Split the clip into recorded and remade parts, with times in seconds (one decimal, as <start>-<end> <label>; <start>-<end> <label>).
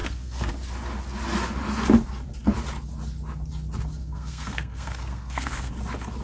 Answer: 0.0-0.5 remade; 0.5-4.0 recorded; 4.0-5.7 remade; 5.7-6.2 recorded